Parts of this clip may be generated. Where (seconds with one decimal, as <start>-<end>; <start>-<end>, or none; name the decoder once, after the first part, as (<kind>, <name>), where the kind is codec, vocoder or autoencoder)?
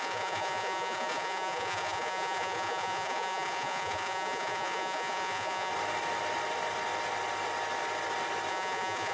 0.0-5.7 (vocoder, Vocos); 8.5-9.1